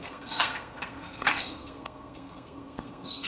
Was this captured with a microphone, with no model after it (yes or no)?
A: no